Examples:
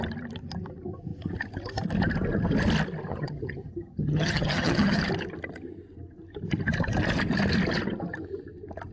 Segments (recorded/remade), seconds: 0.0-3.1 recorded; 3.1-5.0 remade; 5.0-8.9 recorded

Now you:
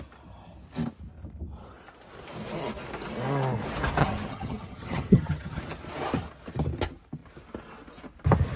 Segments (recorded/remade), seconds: 0.0-4.0 recorded; 4.0-5.6 remade; 5.6-8.6 recorded

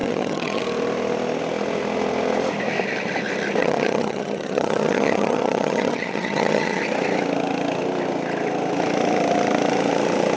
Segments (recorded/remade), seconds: 0.0-0.6 remade; 0.6-3.6 recorded; 3.6-6.8 remade; 6.8-10.4 recorded